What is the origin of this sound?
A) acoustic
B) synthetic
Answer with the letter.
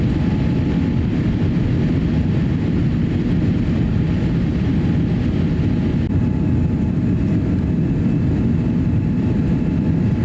A